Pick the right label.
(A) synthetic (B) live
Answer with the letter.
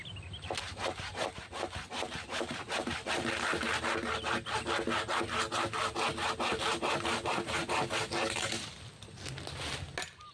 B